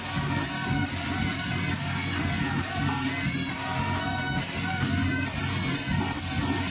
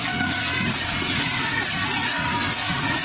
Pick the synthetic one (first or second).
second